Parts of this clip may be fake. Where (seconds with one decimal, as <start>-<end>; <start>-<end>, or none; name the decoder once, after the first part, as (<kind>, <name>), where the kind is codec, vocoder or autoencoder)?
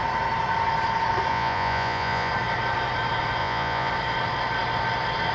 1.3-2.3 (vocoder, Vocos); 3.4-3.9